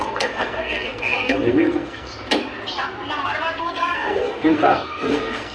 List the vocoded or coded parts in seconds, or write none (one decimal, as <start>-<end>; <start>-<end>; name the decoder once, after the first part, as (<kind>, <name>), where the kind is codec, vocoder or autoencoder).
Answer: 0.0-2.1 (codec, SNAC); 3.6-5.5